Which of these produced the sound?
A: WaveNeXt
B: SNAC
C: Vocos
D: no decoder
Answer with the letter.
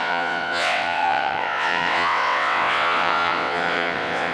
A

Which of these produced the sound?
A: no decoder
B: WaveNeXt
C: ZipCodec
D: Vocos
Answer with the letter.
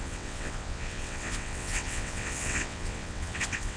B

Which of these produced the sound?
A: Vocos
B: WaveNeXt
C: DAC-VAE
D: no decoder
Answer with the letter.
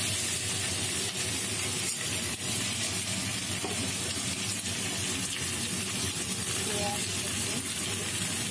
D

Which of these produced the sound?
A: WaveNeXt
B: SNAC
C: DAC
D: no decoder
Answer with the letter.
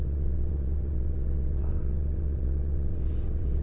A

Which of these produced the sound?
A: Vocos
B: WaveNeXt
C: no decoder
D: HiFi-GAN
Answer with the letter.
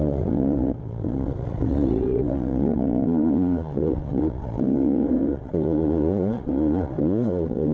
B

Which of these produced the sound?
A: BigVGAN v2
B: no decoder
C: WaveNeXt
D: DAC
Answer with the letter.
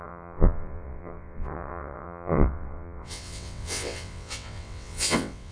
C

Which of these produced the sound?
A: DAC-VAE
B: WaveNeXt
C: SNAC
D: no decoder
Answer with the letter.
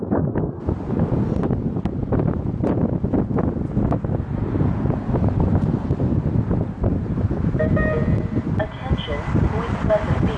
D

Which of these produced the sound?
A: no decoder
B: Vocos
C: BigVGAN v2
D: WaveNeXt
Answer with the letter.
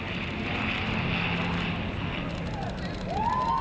A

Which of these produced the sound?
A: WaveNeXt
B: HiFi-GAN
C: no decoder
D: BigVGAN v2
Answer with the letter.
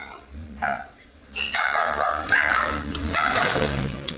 A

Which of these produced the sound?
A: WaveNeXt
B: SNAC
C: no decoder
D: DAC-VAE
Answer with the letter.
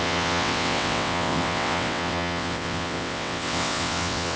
A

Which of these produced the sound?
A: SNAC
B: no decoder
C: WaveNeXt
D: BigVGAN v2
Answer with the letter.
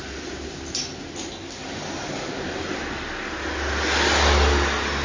B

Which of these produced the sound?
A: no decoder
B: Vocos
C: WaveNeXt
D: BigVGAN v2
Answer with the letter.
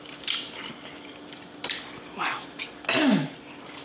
A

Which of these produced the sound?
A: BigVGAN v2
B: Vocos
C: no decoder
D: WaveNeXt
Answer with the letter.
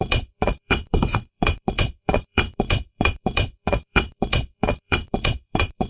D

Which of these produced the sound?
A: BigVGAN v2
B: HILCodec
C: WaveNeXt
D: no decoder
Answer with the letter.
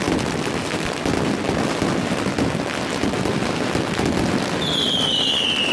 D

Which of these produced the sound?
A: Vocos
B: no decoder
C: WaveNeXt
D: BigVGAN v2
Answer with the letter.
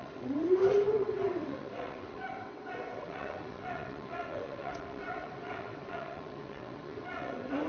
C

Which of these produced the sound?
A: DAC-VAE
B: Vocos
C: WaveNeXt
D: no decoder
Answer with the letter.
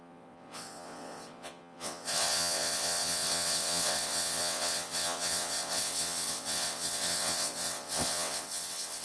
C